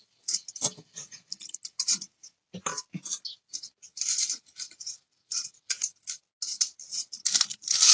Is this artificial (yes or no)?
no